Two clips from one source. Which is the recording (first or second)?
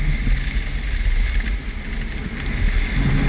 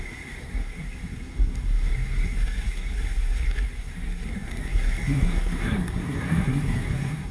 first